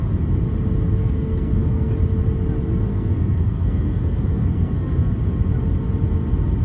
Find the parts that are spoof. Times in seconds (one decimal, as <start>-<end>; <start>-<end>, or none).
1.0-1.9; 2.9-5.1